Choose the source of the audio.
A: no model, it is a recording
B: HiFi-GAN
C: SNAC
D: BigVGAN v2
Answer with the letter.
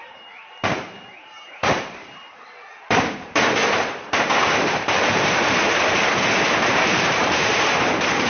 D